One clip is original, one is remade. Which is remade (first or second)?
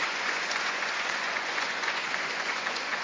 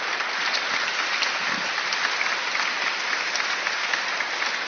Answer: first